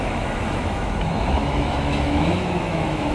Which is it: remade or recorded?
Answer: remade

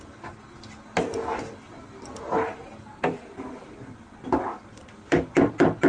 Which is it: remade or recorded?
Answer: recorded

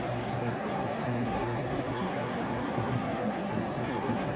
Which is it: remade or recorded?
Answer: remade